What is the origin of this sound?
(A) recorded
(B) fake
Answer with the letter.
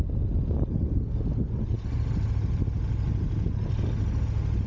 A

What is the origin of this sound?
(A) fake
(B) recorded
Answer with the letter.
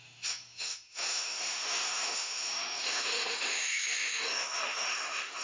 A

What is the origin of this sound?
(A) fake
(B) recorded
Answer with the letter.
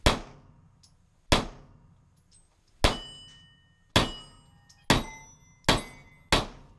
B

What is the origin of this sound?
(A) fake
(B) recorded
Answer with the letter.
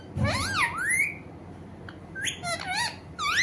B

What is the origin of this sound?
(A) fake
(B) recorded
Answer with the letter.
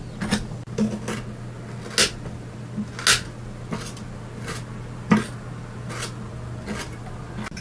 B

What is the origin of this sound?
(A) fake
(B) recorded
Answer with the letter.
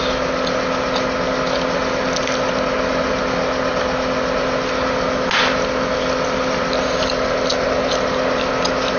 B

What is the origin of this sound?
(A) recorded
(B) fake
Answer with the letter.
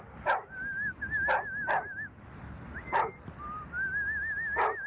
A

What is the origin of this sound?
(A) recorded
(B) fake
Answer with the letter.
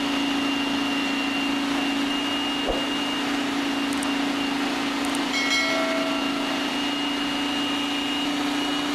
A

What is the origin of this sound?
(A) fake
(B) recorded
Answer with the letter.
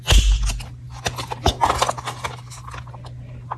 B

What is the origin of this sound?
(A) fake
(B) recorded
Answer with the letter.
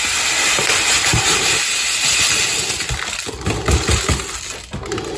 B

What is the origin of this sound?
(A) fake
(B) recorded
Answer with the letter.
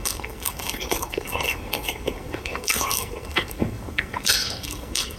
A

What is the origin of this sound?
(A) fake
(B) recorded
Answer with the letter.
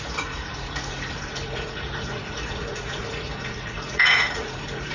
A